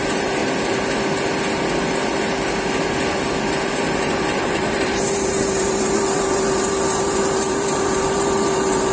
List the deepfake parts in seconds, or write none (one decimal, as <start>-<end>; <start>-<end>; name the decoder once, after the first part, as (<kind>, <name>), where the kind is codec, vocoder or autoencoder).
0.0-0.4 (vocoder, BigVGAN v2); 3.7-8.9